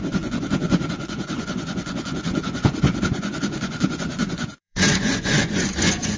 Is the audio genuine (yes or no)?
no